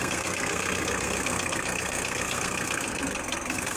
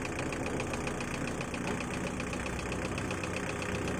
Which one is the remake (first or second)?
first